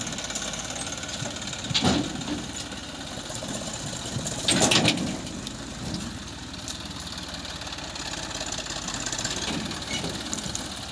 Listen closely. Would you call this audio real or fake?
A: real